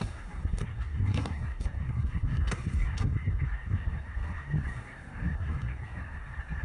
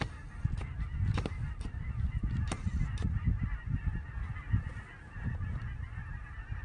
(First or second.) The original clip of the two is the second